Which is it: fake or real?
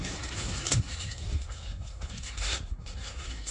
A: fake